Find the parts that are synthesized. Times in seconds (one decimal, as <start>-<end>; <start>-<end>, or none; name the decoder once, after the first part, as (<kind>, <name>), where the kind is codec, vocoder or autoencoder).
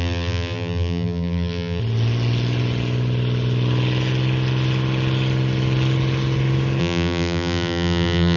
0.0-1.8 (vocoder, BigVGAN v2); 6.8-8.4